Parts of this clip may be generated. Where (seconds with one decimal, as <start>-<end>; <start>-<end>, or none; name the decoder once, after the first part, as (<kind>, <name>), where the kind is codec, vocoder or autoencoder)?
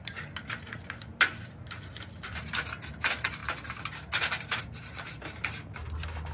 none